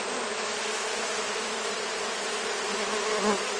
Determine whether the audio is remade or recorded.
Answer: recorded